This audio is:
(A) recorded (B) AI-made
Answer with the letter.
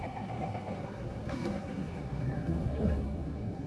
B